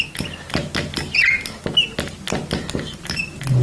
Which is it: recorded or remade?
recorded